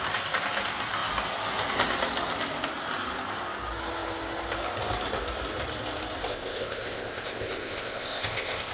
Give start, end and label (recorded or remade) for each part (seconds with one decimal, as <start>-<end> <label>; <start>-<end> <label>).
0.0-6.3 recorded; 6.3-8.7 remade